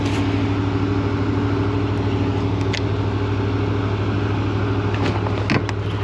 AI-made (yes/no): no